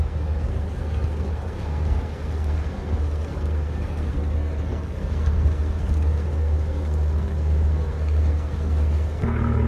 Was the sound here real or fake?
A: fake